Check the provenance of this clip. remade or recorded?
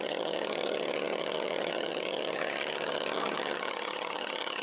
remade